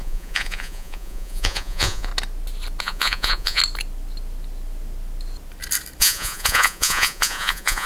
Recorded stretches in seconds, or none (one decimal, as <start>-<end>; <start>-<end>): 2.1-2.8; 3.6-6.0

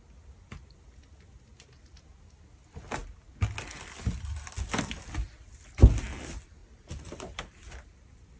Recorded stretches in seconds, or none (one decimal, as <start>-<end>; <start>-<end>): 0.0-8.4

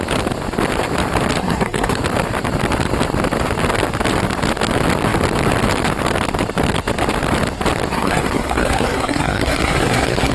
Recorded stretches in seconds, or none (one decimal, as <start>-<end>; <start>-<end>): 0.0-1.4; 2.0-7.9

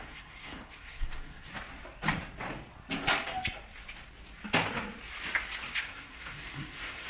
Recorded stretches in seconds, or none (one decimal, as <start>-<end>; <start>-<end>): 1.5-5.8

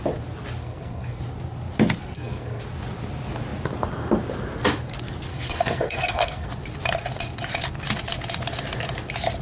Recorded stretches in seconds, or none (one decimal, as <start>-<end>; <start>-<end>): 0.0-0.6; 1.2-2.0; 2.6-5.3; 6.5-9.4

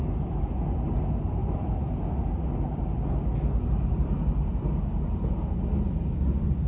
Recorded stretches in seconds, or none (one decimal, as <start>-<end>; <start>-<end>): 0.0-6.7

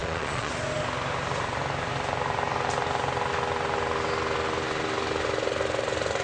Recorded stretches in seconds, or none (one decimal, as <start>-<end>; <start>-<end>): 0.5-6.2